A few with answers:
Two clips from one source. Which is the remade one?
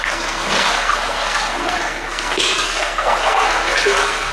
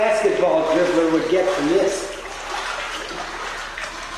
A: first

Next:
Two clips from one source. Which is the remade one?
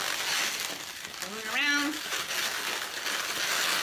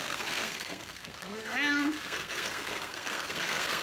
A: second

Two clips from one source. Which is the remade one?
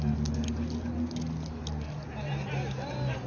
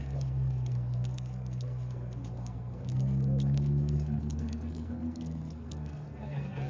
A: second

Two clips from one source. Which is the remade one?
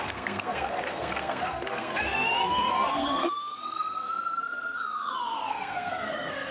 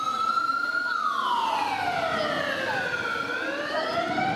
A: first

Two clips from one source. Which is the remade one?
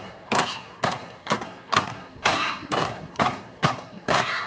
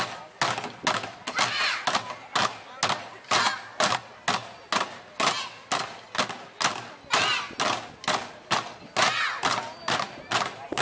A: first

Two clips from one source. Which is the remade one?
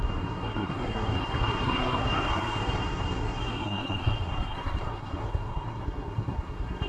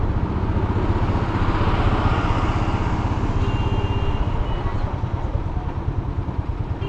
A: first